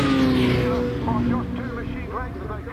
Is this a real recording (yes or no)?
yes